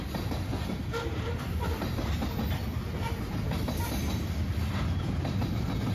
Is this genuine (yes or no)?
yes